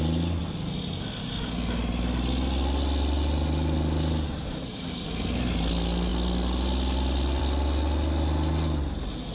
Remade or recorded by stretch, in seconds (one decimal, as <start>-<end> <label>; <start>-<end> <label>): 0.0-9.3 recorded